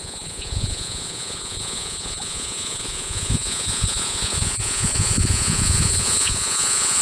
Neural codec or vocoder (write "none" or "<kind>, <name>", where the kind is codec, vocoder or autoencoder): vocoder, Vocos